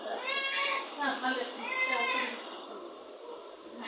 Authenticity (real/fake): fake